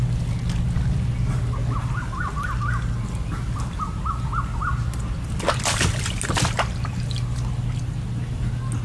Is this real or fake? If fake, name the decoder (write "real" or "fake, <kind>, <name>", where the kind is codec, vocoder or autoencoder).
real